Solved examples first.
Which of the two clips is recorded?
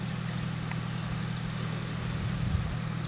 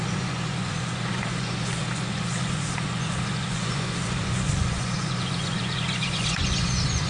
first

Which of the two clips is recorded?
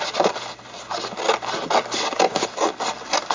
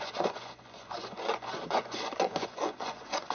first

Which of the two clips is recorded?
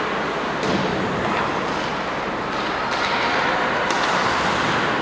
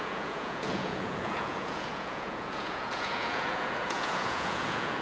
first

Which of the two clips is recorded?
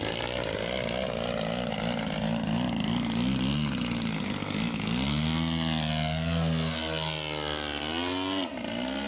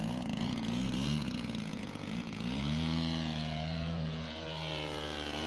first